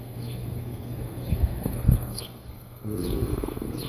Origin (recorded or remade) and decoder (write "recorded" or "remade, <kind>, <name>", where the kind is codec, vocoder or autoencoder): remade, codec, SNAC